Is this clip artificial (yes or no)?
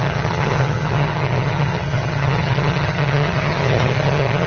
yes